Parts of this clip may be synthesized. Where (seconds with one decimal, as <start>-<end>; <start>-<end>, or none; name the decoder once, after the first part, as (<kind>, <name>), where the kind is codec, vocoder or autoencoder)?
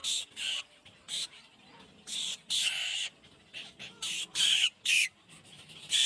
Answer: 0.6-1.5 (vocoder, BigVGAN v2); 5.2-6.1